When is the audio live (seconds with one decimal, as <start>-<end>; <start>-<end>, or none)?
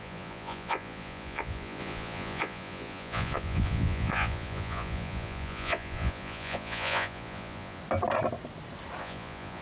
7.8-9.0